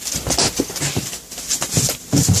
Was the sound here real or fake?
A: real